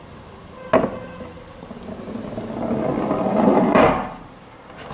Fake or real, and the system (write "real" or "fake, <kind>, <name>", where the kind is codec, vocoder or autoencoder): real